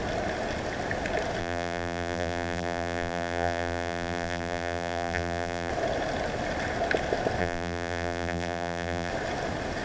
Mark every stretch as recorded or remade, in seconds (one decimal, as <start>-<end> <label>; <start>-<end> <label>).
0.0-1.4 recorded; 1.4-5.7 remade; 5.7-7.4 recorded; 7.4-9.1 remade; 9.1-9.8 recorded